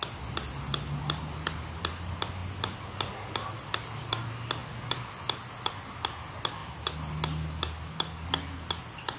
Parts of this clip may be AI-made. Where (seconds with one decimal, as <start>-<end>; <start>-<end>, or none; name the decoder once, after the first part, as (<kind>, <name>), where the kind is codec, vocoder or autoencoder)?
none